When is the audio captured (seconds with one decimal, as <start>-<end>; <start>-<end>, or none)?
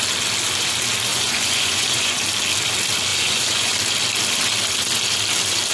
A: 0.0-1.1; 2.2-3.1; 3.7-5.7